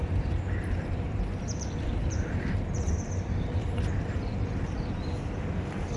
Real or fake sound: fake